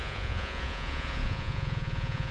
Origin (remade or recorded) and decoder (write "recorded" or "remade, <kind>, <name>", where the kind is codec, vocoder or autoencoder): remade, vocoder, Vocos